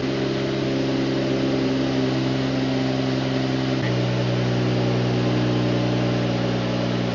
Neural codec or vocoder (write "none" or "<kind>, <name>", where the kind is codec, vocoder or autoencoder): none